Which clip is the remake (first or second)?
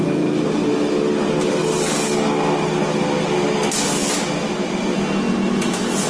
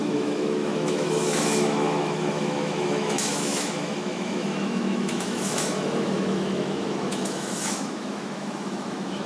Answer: second